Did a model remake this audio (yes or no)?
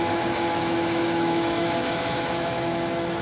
yes